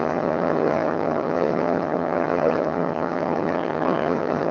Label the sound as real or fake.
fake